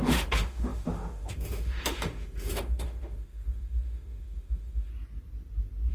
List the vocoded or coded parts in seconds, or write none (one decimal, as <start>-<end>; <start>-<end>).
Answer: 0.0-4.9